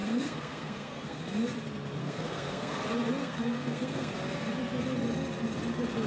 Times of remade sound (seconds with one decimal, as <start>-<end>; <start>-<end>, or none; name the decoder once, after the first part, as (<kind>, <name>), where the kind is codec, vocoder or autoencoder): 0.0-1.2 (codec, SNAC); 2.0-2.8; 3.2-4.1